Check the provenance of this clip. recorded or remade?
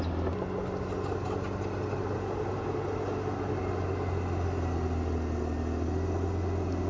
recorded